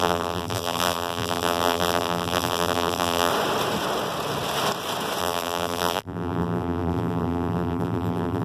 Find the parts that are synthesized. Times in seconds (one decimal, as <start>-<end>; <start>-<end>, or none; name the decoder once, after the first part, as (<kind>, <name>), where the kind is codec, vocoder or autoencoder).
0.0-3.3 (vocoder, BigVGAN v2); 5.2-8.4